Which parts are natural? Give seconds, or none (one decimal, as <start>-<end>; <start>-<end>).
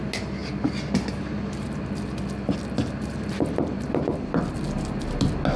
0.0-5.6